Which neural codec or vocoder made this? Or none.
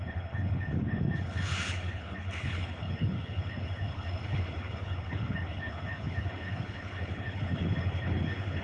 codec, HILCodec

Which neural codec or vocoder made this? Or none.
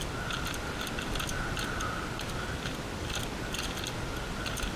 none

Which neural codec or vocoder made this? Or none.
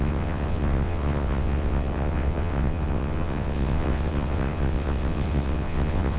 vocoder, WaveNeXt